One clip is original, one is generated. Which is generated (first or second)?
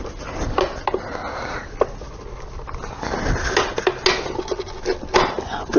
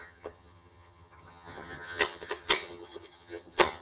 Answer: second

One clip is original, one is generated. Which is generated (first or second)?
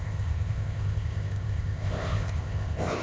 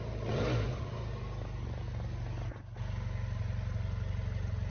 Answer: first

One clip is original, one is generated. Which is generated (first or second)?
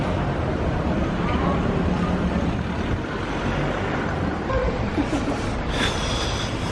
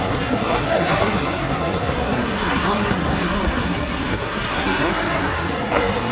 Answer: second